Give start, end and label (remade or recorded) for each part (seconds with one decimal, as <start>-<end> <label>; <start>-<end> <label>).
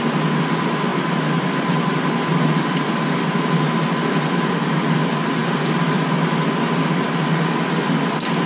0.0-8.5 recorded